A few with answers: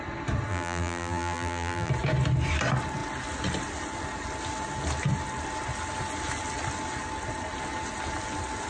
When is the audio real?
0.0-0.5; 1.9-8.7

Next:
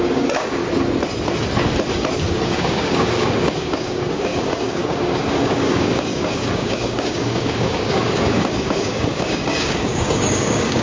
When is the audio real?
0.6-2.5

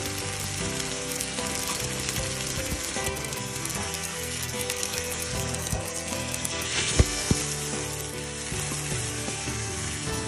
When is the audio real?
0.0-0.9; 1.4-2.6; 7.4-9.1